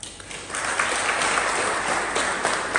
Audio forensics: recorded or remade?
recorded